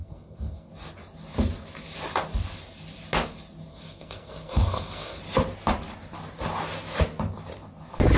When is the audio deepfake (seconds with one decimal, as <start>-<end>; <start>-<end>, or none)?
0.0-0.7; 3.7-5.2